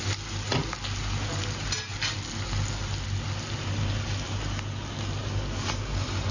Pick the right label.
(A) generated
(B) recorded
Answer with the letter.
B